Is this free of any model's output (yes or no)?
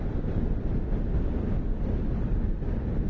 no